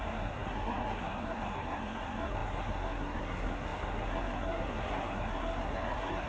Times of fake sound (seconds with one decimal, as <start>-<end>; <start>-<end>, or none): 0.0-6.3